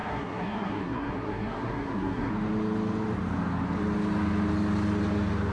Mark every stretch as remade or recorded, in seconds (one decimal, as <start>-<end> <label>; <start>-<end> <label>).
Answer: 0.0-2.3 remade; 2.3-5.5 recorded